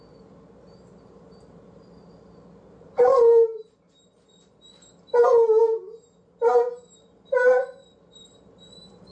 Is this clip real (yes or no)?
yes